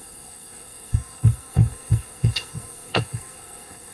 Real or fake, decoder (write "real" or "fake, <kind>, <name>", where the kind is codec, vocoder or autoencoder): fake, codec, SNAC